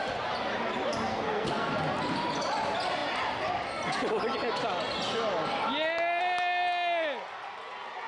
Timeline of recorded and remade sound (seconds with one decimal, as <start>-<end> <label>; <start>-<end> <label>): 0.0-1.1 recorded; 1.1-1.7 remade; 1.7-8.1 recorded